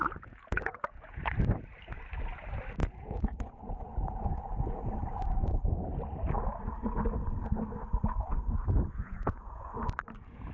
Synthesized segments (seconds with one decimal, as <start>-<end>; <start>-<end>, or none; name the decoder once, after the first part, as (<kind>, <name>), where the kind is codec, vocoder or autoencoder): 0.0-1.2 (vocoder, Vocos); 2.8-4.9; 9.0-9.7